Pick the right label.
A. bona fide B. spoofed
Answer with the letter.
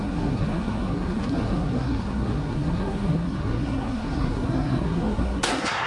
B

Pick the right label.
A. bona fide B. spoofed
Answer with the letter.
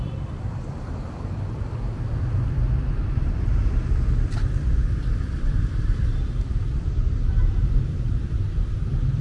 B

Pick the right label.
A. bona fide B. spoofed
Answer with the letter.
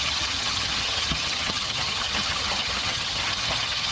B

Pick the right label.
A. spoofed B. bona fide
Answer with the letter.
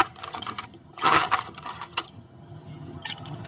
A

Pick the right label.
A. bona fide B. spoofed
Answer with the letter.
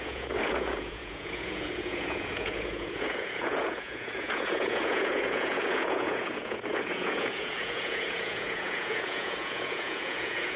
B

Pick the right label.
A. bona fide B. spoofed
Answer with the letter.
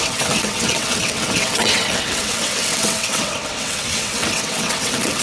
B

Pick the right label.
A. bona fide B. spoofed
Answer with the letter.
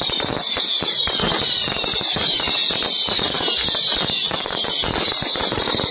B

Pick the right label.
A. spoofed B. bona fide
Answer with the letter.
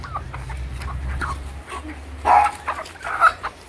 B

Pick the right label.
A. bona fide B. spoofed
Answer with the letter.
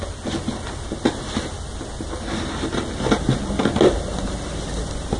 A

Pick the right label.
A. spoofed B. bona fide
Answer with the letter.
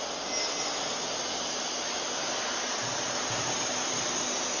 B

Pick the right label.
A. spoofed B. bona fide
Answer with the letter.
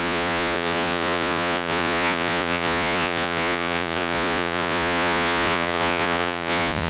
A